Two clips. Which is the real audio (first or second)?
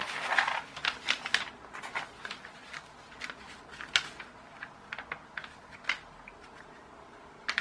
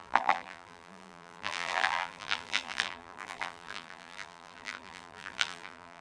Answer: first